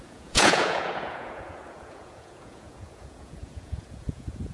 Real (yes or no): no